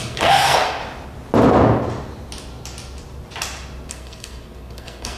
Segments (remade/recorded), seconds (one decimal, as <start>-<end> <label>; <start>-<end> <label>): 0.0-0.8 remade; 0.8-3.9 recorded; 3.9-5.2 remade